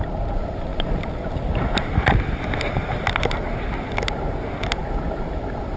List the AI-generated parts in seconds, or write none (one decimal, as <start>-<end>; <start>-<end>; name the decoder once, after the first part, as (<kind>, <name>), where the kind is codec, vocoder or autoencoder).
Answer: none